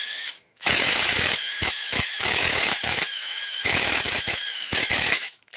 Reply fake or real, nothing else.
fake